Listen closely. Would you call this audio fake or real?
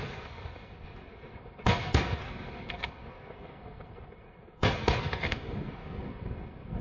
fake